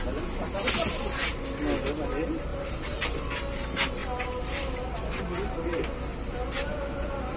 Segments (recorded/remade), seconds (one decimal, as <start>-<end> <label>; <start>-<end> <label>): 0.0-2.5 recorded; 2.5-3.2 remade; 3.2-4.0 recorded; 4.0-5.0 remade; 5.0-7.4 recorded